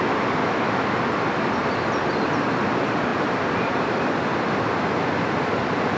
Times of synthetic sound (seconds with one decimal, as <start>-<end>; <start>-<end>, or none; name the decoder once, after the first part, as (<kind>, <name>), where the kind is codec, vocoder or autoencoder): 0.4-1.0 (autoencoder, DAC-VAE)